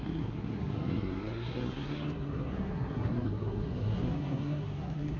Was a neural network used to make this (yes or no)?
yes